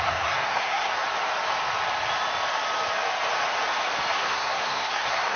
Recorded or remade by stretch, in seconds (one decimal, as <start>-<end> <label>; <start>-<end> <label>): 0.0-0.9 remade; 0.9-4.1 recorded; 4.1-5.4 remade